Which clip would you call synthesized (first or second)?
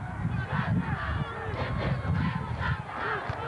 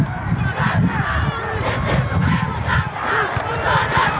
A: second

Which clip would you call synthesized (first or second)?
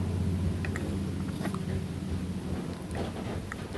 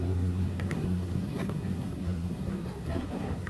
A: second